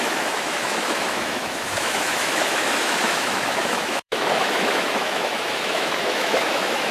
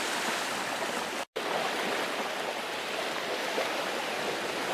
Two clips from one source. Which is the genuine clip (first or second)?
second